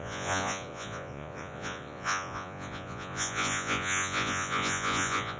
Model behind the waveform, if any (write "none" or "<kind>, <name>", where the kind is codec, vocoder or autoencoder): vocoder, Vocos